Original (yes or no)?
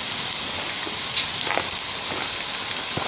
yes